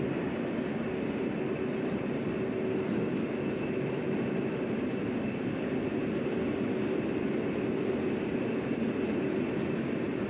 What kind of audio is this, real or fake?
real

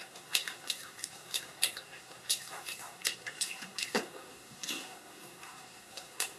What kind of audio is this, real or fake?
fake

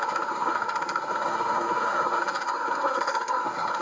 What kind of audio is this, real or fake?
fake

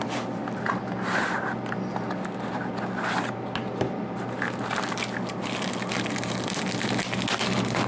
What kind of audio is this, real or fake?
real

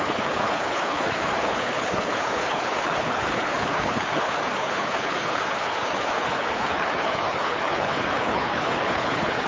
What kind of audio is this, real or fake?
fake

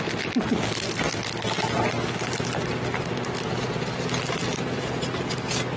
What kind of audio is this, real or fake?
real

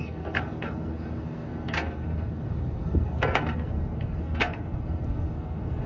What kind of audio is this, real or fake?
fake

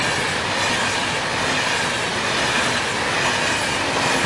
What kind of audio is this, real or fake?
real